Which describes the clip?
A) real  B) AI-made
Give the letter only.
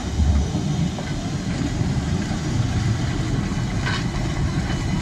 A